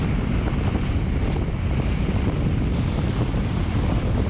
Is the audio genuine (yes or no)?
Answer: no